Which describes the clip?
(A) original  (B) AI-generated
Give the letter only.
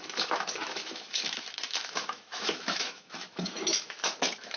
B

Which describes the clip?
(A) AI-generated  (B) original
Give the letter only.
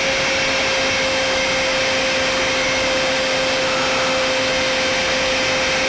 B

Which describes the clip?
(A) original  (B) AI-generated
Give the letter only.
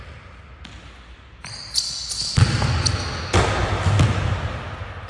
A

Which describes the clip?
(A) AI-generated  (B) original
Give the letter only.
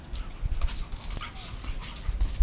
B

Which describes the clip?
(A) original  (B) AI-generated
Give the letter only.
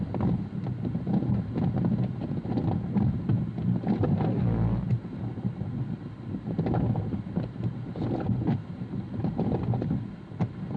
B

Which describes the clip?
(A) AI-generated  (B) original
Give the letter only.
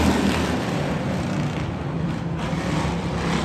B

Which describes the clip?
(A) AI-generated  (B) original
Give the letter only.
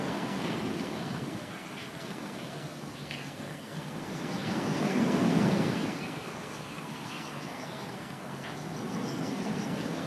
A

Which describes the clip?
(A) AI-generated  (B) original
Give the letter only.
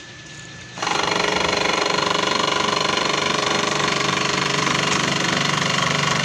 A